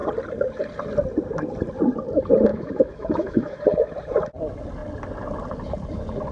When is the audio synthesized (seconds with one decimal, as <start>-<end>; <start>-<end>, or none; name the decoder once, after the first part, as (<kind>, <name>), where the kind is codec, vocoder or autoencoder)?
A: 2.5-3.6 (autoencoder, DAC-VAE)